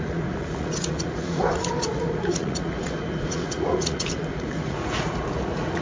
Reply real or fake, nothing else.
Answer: fake